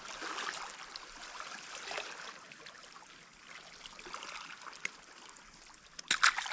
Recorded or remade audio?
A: recorded